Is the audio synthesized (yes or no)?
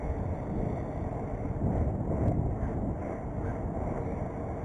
no